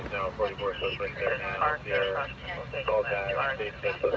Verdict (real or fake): real